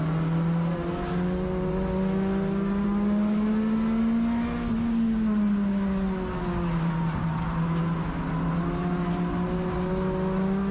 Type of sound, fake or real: real